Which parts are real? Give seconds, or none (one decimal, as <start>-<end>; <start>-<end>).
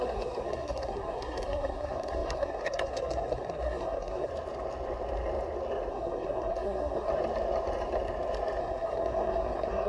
4.3-5.9; 7.1-8.6